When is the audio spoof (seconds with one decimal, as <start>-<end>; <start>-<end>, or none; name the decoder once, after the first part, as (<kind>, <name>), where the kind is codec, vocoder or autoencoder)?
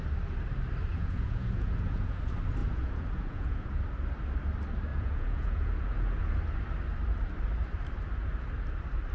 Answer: 0.9-2.2 (vocoder, Vocos); 2.6-3.8; 4.9-6.4